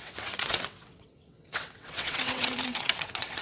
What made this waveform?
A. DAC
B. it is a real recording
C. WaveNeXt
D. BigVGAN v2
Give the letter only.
C